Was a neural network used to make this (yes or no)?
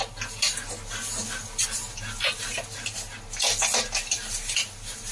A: no